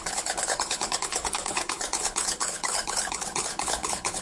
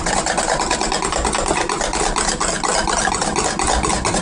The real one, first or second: second